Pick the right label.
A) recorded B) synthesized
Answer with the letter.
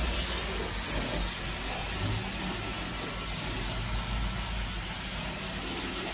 A